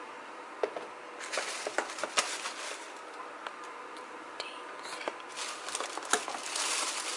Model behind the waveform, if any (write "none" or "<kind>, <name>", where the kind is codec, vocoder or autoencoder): none